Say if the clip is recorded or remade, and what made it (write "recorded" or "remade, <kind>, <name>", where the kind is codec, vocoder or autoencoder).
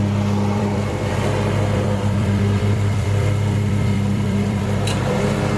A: remade, vocoder, BigVGAN v2